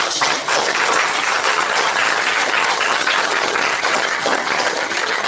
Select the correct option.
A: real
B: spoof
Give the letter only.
B